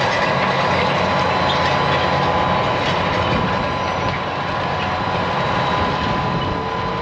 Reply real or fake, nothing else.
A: real